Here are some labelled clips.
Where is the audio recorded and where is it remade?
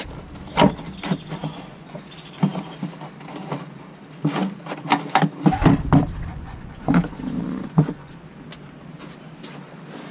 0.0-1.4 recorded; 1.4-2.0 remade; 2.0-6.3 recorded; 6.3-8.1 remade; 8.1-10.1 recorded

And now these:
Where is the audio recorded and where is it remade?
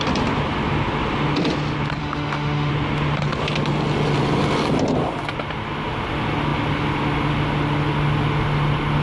0.0-2.0 recorded; 2.0-2.7 remade; 2.7-9.0 recorded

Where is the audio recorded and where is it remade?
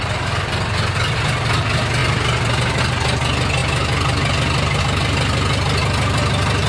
0.0-6.7 recorded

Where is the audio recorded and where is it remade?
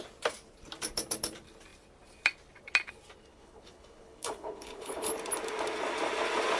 0.0-3.3 recorded; 3.3-5.1 remade; 5.1-6.6 recorded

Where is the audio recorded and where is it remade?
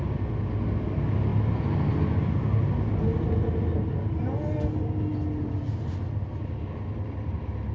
0.0-7.7 recorded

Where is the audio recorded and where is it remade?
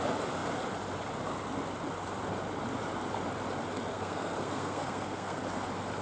0.0-3.9 recorded; 3.9-5.4 remade; 5.4-6.0 recorded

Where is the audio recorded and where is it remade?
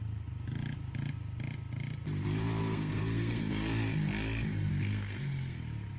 0.0-2.6 recorded; 2.6-3.5 remade; 3.5-4.7 recorded; 4.7-5.6 remade; 5.6-6.0 recorded